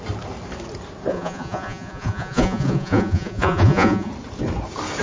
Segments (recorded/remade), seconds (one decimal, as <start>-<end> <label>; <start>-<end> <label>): 0.0-1.1 recorded; 1.1-4.1 remade; 4.1-5.0 recorded